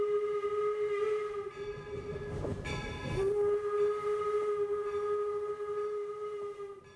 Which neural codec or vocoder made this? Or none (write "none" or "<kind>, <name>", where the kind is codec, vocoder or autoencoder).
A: none